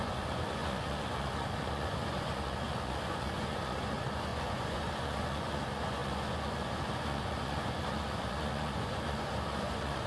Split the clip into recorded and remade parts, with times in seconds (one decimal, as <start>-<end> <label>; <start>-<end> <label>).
0.0-10.1 remade